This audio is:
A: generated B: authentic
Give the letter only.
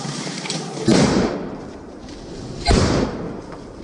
A